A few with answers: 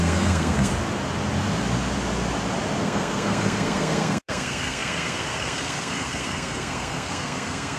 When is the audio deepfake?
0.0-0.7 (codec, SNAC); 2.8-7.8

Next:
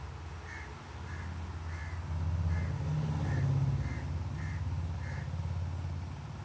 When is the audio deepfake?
none

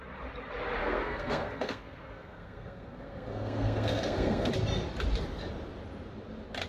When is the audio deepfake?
0.8-4.5 (codec, SNAC)